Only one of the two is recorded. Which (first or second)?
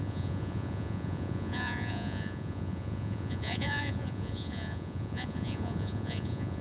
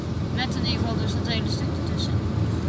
second